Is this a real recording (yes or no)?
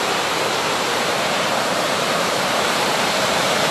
no